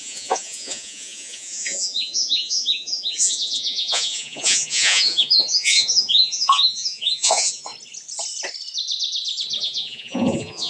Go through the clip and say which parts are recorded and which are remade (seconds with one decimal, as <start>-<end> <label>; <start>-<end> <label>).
0.0-7.7 remade; 7.7-9.6 recorded; 9.6-10.7 remade